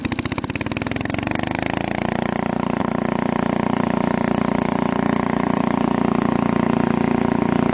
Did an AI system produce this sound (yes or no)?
no